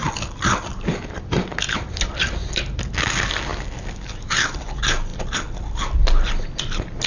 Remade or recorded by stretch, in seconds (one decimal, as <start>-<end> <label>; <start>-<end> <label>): 0.0-7.1 recorded

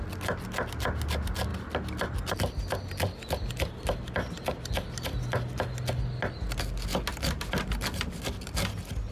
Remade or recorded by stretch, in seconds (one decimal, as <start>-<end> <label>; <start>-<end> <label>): 0.0-9.1 recorded